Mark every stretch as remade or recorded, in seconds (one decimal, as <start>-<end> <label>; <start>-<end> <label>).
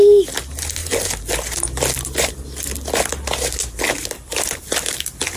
0.0-5.4 recorded